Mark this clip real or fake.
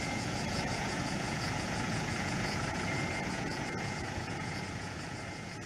fake